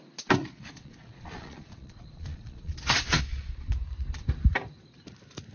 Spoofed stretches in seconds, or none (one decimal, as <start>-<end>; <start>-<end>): 0.4-3.7